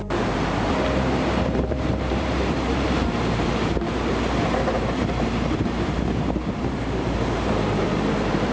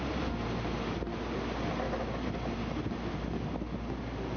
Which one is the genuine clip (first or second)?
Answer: second